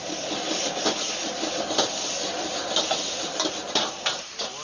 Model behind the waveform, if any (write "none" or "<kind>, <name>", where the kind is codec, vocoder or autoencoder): none